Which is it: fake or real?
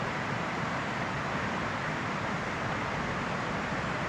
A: fake